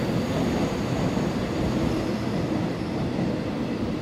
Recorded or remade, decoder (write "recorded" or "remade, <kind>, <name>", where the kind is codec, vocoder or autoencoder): recorded